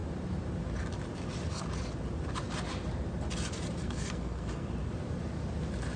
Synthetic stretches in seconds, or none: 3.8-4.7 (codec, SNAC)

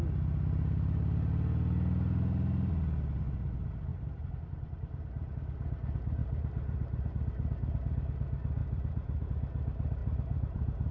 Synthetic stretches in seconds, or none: 3.9-5.3 (vocoder, BigVGAN v2); 6.2-7.1; 8.6-9.3; 10.0-10.9

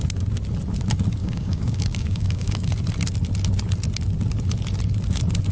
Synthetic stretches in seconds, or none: 1.2-2.7 (codec, DAC)

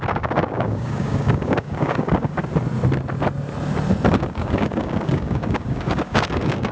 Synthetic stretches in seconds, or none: 0.0-2.4 (codec, DAC); 4.1-6.7

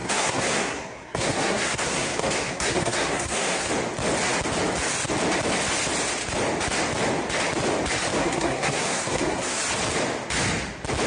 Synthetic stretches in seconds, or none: 0.0-3.7 (codec, SNAC); 8.2-9.6